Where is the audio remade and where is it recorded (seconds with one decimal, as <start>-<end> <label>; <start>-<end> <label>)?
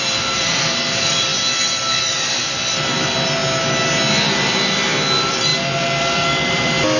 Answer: 0.0-1.3 remade; 1.3-2.0 recorded; 2.0-3.4 remade; 3.4-4.2 recorded; 4.2-5.5 remade; 5.5-6.0 recorded; 6.0-7.0 remade